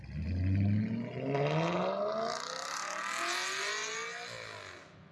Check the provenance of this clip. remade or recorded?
recorded